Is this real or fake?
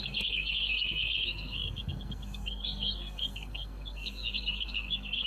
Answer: fake